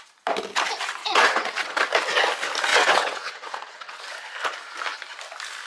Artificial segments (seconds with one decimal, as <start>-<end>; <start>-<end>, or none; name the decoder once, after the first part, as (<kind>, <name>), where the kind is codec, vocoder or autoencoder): 1.0-1.8 (vocoder, WaveNeXt); 2.7-4.0